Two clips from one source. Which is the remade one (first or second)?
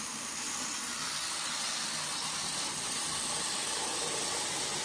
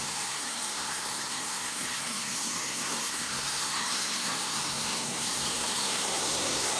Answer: second